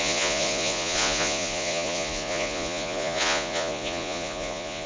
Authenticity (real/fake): fake